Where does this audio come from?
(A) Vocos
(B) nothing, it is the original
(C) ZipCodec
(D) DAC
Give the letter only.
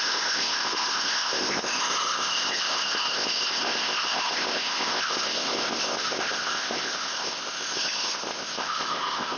C